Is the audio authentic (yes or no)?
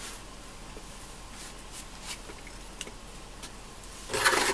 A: yes